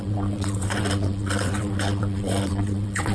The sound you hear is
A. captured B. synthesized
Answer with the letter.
B